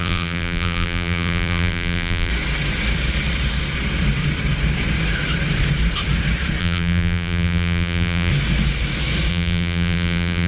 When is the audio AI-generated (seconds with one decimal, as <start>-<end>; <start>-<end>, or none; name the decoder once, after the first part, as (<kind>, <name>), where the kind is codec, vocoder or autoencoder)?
0.0-2.3 (vocoder, BigVGAN v2); 6.6-8.3; 9.3-10.5